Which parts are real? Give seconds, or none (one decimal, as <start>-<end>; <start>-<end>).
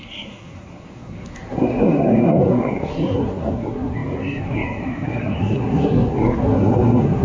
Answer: none